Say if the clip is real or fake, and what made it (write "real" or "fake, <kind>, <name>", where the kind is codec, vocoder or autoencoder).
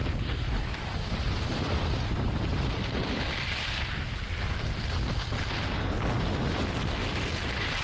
real